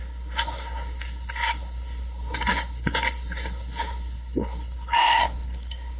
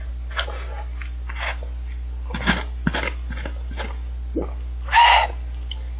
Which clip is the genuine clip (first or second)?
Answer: second